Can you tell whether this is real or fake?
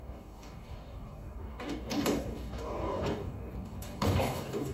fake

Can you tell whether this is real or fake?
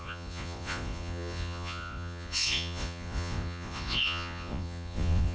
fake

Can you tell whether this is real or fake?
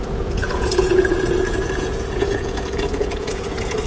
fake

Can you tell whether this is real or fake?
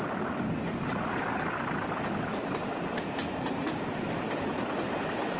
real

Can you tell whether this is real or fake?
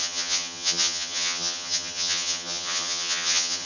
fake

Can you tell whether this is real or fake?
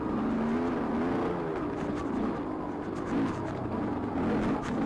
real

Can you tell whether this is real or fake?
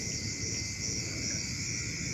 real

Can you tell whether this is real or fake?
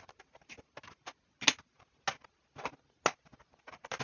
real